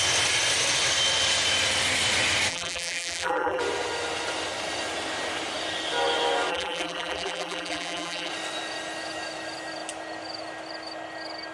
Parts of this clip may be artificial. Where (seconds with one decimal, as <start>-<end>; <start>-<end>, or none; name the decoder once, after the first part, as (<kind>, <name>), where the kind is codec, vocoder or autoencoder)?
2.5-3.6 (vocoder, BigVGAN v2); 6.5-8.3